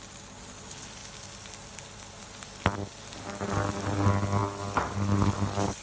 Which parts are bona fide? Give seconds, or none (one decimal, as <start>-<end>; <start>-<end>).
0.0-5.8